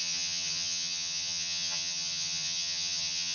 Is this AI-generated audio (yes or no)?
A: yes